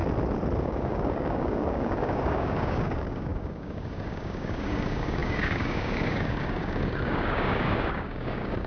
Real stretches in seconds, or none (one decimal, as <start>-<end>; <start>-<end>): 0.0-0.6

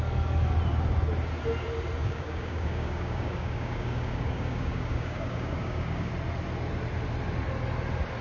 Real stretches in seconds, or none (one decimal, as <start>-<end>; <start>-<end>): 0.0-2.0; 6.1-8.2